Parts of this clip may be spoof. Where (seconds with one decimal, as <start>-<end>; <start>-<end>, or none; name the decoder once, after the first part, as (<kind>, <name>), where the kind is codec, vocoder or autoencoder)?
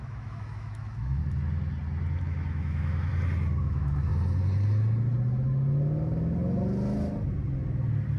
0.0-1.2 (autoencoder, DAC-VAE); 2.2-3.1; 3.6-4.1